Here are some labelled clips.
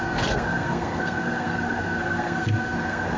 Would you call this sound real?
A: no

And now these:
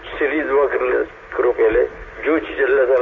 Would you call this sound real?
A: yes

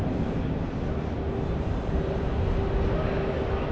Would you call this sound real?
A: yes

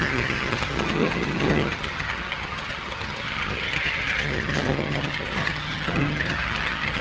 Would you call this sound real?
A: no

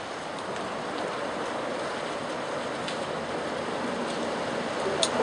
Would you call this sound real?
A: yes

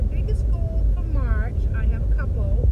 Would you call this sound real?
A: yes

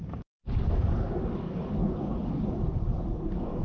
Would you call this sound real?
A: no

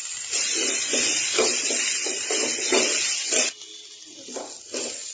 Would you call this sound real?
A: yes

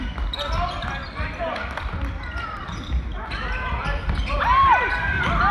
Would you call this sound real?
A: no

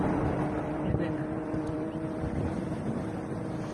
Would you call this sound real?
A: no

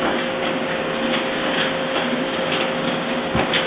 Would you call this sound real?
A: no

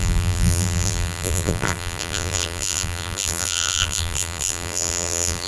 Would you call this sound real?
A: no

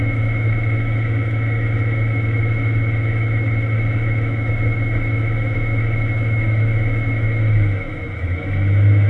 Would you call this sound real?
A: no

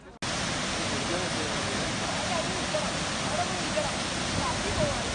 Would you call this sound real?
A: yes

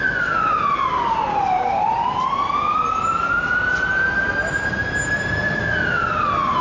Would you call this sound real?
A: yes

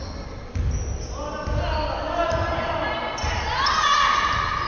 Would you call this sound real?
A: yes